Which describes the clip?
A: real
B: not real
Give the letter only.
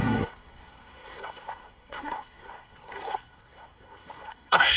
B